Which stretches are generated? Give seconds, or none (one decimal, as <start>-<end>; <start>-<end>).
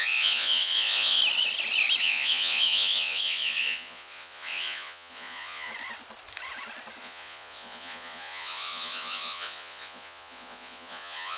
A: 0.0-1.2; 2.0-5.7; 7.0-11.4